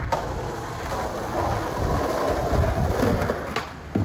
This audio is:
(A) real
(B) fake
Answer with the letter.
A